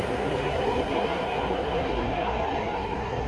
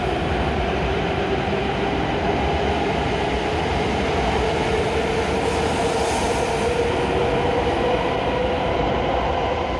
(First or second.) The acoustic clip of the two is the second